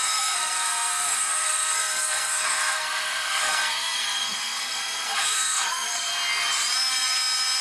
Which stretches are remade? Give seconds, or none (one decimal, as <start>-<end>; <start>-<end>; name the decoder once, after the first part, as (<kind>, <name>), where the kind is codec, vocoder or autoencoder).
0.0-6.1 (codec, SNAC)